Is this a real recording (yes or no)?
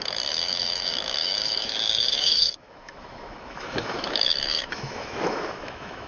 no